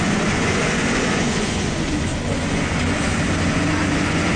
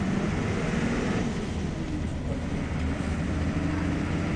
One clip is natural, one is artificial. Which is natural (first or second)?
second